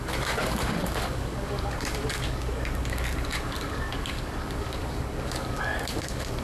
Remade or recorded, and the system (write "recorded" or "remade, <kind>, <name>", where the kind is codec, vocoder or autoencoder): remade, codec, DAC